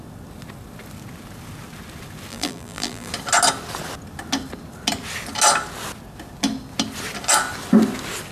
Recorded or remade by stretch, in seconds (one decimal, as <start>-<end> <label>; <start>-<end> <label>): 0.0-2.3 recorded; 2.3-3.1 remade; 3.1-8.3 recorded